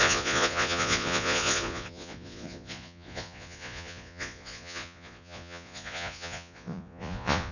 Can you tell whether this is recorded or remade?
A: remade